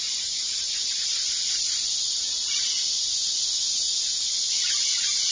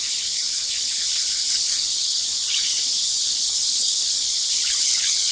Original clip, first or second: first